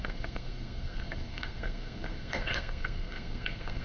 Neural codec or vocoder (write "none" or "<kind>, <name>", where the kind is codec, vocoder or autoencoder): codec, SNAC